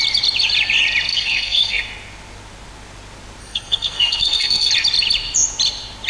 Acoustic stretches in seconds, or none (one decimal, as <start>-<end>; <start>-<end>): 0.0-1.1; 1.8-3.4; 4.7-6.1